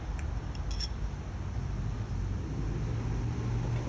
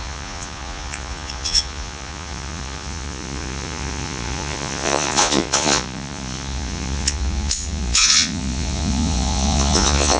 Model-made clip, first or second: second